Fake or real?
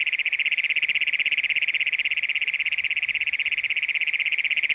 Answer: real